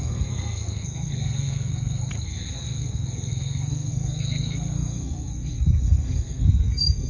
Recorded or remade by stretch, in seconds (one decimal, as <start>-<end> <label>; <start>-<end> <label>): 0.0-7.1 remade